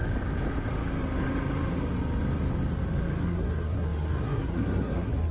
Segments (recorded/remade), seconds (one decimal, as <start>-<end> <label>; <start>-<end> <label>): 0.0-3.2 recorded; 3.2-5.3 remade